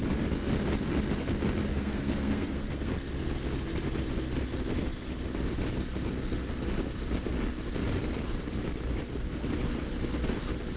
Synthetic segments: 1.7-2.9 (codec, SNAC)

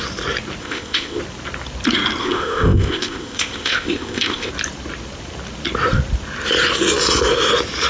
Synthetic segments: 0.6-1.2 (codec, ZipCodec); 2.2-4.5

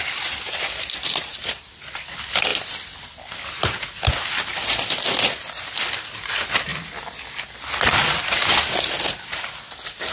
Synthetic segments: none

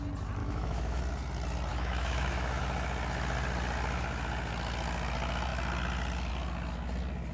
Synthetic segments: 0.4-1.0 (autoencoder, DAC-VAE); 1.7-2.6

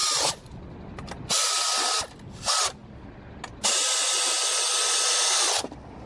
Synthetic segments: none

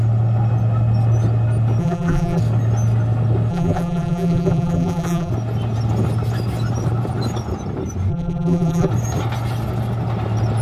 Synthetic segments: 1.8-2.4 (vocoder, BigVGAN v2); 3.5-5.3; 8.1-8.9

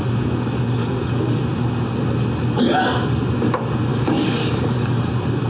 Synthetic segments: 0.8-1.4 (codec, DAC); 3.9-5.1